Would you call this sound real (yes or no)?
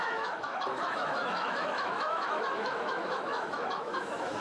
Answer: no